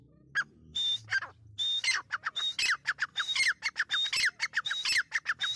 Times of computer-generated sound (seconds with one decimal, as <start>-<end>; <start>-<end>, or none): none